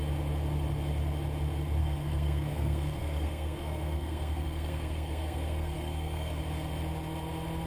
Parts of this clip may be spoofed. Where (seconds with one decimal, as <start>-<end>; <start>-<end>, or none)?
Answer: 1.8-6.4